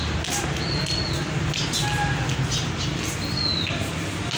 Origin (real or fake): real